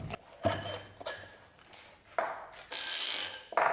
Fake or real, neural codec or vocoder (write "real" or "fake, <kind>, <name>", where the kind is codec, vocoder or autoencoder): real